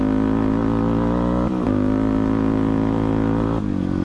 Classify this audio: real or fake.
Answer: real